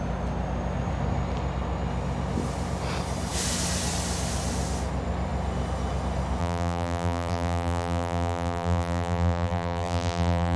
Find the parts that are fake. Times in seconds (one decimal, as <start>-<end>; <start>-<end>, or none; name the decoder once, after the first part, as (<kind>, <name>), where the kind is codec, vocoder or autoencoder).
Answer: 6.4-10.6 (vocoder, BigVGAN v2)